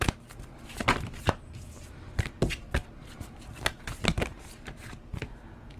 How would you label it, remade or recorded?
remade